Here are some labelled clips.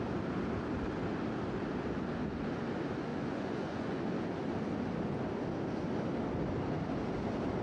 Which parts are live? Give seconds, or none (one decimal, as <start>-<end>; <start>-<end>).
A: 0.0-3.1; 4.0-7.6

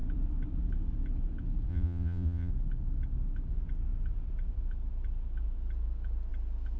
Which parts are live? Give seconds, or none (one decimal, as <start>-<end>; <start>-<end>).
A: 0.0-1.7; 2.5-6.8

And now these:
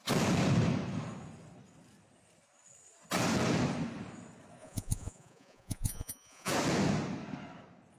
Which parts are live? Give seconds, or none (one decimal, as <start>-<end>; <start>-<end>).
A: 0.0-4.6; 6.5-8.0

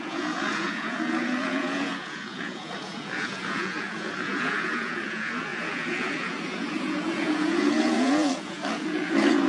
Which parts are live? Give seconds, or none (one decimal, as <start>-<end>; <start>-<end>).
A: none

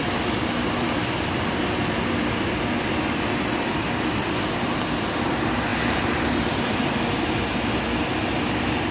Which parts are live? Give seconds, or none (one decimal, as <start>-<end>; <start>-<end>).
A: 0.0-8.9

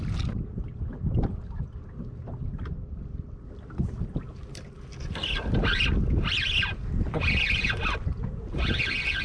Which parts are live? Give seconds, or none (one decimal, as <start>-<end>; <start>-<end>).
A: 0.0-9.2

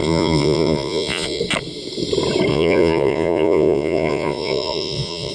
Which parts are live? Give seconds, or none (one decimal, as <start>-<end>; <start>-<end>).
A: 1.4-2.5

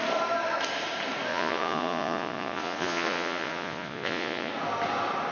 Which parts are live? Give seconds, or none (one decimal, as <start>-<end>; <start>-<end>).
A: 0.0-1.3; 4.5-5.3